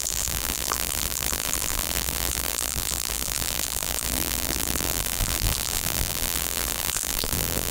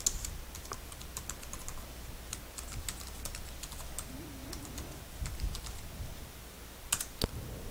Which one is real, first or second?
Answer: second